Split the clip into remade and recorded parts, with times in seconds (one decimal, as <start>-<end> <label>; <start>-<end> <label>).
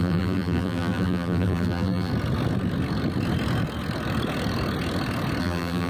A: 0.0-2.1 remade; 2.1-5.4 recorded; 5.4-5.9 remade